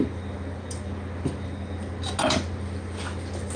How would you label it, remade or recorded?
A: recorded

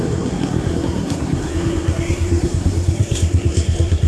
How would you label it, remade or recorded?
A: remade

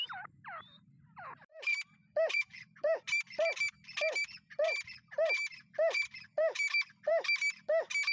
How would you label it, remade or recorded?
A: remade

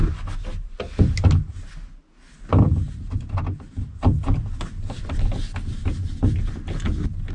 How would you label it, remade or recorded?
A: recorded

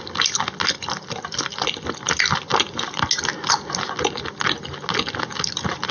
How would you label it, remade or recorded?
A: recorded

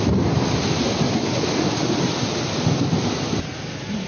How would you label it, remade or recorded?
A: recorded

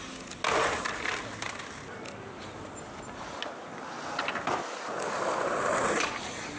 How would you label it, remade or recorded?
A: recorded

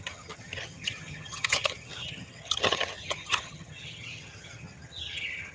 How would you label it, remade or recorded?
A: remade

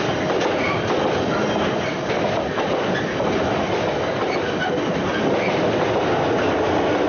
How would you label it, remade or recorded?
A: recorded